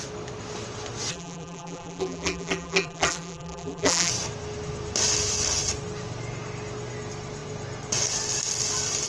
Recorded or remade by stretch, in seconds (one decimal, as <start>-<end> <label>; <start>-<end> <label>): 0.0-1.1 recorded; 1.1-4.1 remade; 4.1-9.1 recorded